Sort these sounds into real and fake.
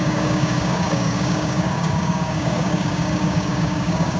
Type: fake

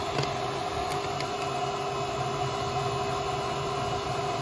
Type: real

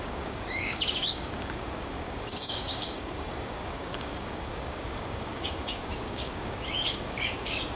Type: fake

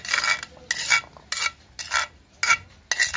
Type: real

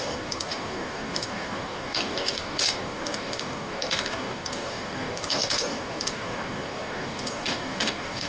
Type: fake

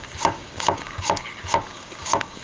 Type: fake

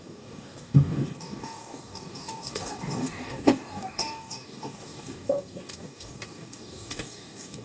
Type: fake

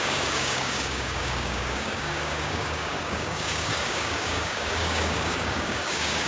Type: fake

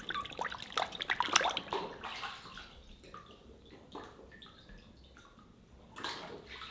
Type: real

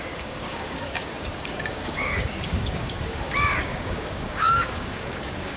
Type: fake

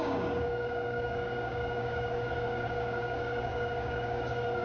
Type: fake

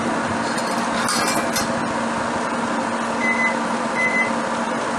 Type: real